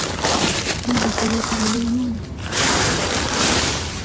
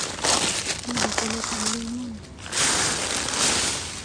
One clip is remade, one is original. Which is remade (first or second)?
first